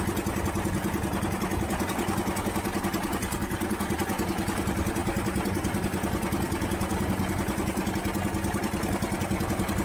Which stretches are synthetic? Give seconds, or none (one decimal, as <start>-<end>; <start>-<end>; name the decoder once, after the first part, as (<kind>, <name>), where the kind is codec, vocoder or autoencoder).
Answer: none